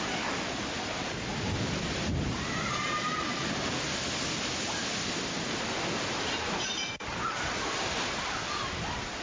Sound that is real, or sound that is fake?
real